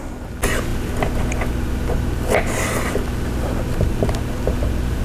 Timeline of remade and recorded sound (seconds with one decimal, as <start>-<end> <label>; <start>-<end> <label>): 0.0-5.0 recorded

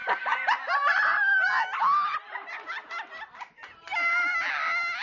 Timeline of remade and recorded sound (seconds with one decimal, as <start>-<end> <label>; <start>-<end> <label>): 0.0-5.0 recorded

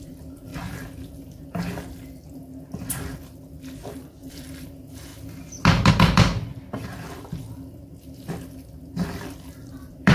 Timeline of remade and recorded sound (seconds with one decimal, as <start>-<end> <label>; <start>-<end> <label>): 0.0-0.5 remade; 0.5-4.3 recorded; 4.3-5.1 remade; 5.1-5.9 recorded; 5.9-6.5 remade; 6.5-7.5 recorded; 7.5-10.1 remade

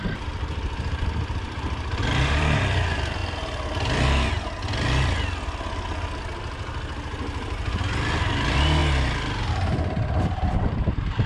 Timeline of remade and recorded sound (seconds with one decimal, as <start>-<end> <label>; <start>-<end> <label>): 0.0-3.2 remade; 3.2-8.2 recorded; 8.2-8.8 remade; 8.8-9.5 recorded; 9.5-11.3 remade